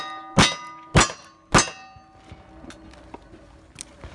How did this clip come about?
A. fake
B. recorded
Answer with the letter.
B